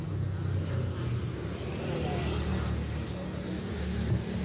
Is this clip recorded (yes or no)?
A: yes